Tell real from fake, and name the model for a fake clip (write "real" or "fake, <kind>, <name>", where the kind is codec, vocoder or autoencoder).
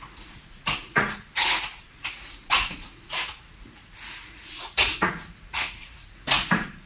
fake, vocoder, Vocos